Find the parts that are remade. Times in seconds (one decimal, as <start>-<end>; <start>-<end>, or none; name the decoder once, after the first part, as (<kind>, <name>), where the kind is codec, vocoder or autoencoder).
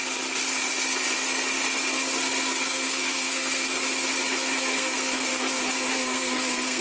2.6-3.8 (codec, SNAC); 4.6-5.3; 5.9-6.8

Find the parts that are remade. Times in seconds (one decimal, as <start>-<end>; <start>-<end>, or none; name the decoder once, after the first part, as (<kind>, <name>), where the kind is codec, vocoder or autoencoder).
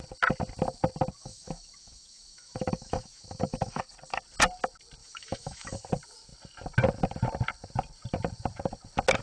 1.2-3.8 (autoencoder, DAC-VAE); 5.0-5.8